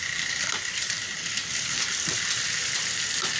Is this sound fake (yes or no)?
no